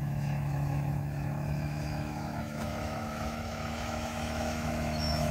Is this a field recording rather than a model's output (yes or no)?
no